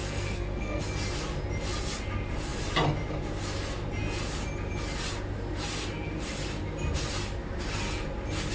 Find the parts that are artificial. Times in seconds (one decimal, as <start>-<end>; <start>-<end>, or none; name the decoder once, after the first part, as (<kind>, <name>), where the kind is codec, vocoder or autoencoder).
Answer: 0.0-0.8 (codec, SNAC)